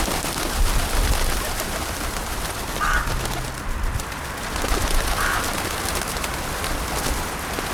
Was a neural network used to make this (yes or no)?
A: no